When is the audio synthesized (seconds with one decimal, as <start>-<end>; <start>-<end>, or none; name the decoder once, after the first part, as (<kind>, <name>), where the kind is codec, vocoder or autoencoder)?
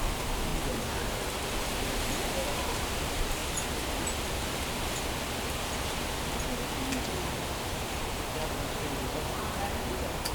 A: 0.0-0.5 (vocoder, BigVGAN v2); 1.6-3.4; 7.7-10.3